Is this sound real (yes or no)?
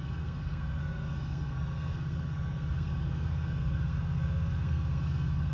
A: no